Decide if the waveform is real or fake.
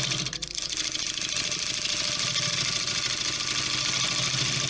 real